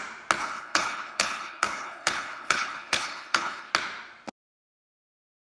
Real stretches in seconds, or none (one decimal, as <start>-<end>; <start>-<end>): 0.0-0.4; 3.7-5.5